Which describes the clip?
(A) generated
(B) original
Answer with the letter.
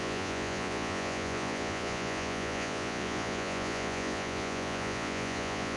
A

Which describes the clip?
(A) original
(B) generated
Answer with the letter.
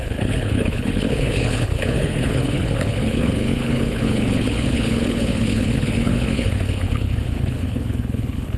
B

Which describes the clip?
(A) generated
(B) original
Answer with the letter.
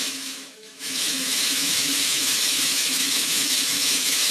A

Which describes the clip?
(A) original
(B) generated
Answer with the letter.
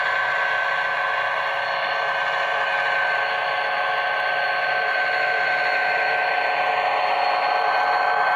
A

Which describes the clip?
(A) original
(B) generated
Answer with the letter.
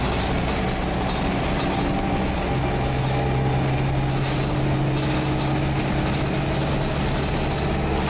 A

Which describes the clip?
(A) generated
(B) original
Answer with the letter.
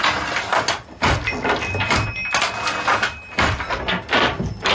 B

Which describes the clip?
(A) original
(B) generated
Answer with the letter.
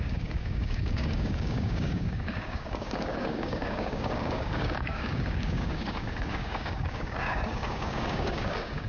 B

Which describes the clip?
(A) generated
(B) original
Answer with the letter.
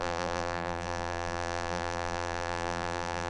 A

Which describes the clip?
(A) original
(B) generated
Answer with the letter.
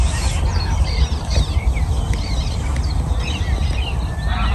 A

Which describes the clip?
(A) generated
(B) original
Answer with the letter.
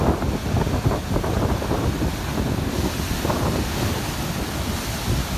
B